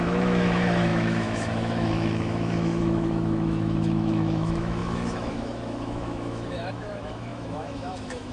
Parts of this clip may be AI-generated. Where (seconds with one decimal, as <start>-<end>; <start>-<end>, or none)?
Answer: 0.0-8.3